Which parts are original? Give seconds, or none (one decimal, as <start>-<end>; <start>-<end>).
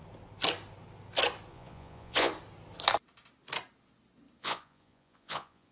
0.0-1.5; 2.3-4.4